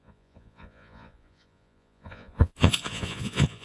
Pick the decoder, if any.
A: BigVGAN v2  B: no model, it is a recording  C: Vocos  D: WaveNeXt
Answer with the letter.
C